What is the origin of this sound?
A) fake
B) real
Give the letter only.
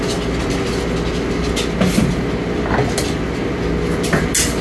B